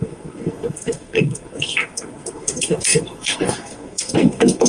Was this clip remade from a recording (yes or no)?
yes